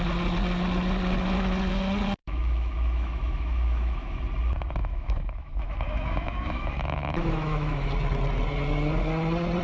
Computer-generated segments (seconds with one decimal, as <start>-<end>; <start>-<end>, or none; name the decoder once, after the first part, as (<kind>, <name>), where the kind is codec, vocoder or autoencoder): 2.2-4.2 (autoencoder, DAC-VAE); 4.8-7.9

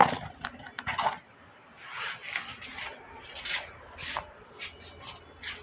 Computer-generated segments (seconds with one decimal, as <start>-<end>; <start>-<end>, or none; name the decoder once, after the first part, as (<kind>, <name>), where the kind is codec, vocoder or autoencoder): none